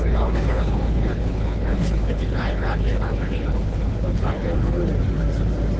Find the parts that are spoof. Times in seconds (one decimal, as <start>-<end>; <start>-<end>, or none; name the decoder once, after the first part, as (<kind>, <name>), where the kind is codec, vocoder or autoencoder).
0.0-4.8 (codec, HILCodec)